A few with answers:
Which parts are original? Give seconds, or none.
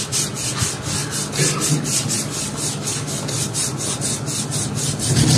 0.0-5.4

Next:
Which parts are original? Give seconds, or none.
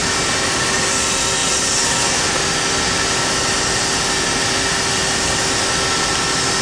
0.0-1.4; 2.3-6.6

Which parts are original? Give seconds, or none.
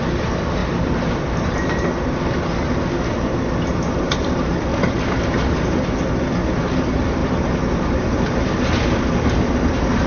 0.0-0.6; 2.0-4.7; 5.8-7.2; 8.7-10.1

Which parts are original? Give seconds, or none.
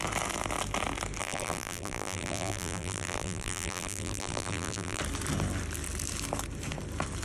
0.0-1.2; 5.0-7.2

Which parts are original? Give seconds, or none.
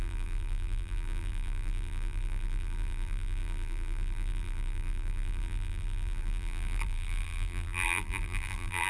none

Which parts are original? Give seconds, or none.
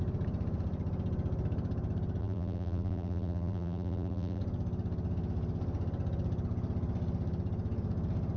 0.0-2.2; 4.4-8.4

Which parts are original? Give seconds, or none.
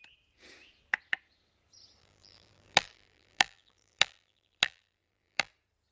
0.0-2.0; 5.5-5.9